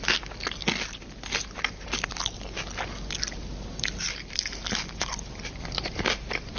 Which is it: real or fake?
real